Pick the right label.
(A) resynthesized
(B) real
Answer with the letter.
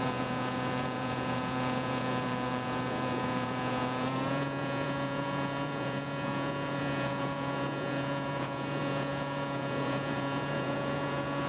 A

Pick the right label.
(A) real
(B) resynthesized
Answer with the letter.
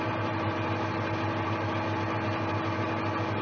A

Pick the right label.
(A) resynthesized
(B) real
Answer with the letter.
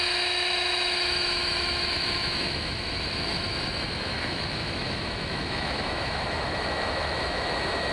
A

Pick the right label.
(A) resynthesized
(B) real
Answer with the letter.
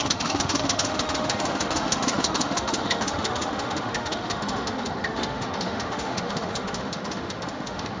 A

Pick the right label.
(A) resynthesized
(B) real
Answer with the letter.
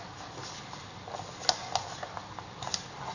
B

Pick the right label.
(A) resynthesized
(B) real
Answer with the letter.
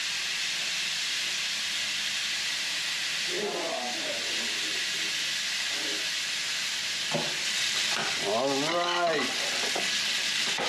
B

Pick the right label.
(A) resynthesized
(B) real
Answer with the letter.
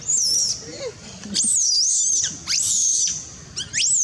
B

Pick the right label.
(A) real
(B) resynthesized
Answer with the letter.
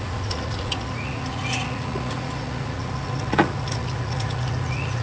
B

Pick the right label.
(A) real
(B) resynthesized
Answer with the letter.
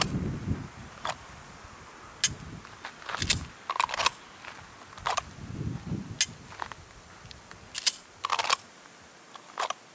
A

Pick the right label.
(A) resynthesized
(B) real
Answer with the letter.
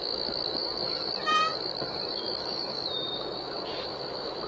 A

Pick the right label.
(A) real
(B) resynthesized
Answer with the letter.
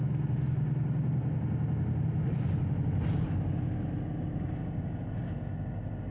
A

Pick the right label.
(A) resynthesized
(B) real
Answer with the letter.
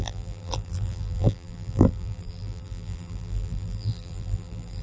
A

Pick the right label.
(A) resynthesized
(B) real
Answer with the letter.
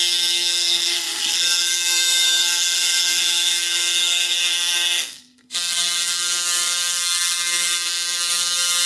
A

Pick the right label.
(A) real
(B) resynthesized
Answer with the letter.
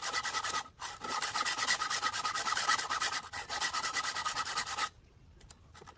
A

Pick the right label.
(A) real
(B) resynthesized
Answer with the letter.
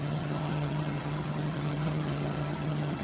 B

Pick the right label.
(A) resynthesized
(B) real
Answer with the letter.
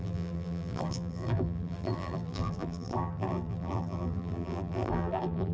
A